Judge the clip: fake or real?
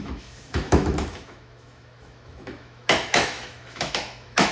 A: fake